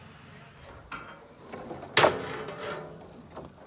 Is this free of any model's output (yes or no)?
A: yes